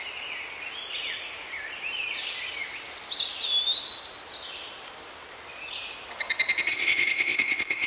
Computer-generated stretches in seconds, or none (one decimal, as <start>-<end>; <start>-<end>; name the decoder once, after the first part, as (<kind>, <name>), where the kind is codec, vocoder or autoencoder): 6.7-7.9 (codec, ZipCodec)